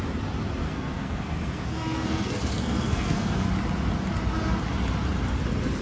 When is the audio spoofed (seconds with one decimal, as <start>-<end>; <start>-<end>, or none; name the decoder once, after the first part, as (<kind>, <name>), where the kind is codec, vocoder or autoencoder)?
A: 0.6-3.5 (codec, SNAC)